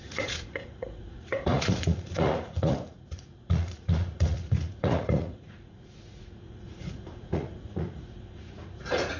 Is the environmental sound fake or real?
fake